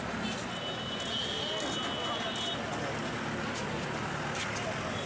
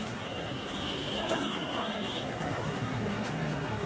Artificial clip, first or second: second